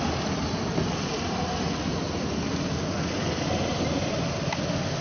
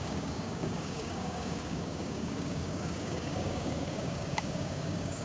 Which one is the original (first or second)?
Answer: first